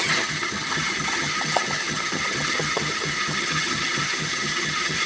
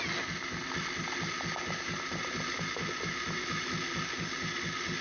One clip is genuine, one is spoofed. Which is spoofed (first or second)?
first